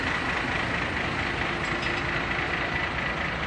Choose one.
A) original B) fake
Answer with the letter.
A